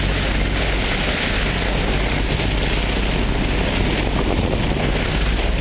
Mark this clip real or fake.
real